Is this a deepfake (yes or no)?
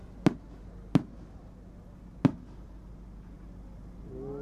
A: no